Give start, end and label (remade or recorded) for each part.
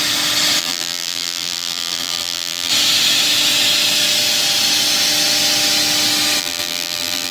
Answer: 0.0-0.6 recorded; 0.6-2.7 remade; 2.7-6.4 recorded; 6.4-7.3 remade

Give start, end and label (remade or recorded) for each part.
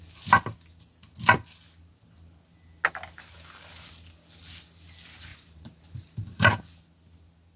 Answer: 0.0-5.3 recorded; 5.3-6.6 remade; 6.6-7.6 recorded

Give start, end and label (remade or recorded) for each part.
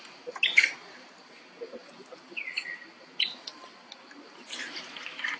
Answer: 0.0-5.4 recorded